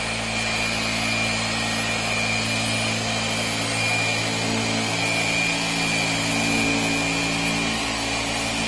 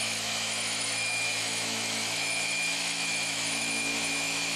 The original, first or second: first